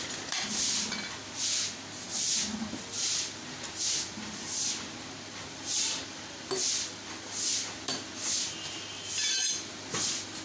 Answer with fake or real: real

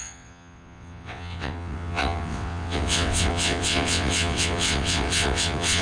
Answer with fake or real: fake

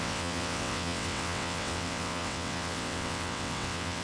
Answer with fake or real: fake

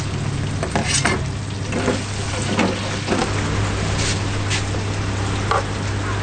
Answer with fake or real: real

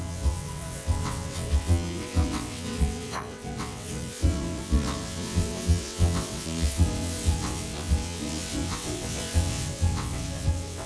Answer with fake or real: fake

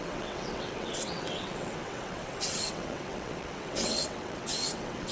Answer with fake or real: fake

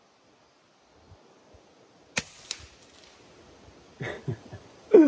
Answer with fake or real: real